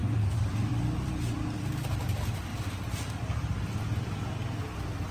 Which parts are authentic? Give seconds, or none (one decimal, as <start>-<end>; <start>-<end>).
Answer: 0.0-5.1